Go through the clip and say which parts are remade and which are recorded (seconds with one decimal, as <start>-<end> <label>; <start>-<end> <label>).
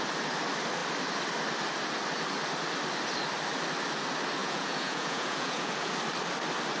0.0-4.4 recorded; 4.4-5.9 remade; 5.9-6.8 recorded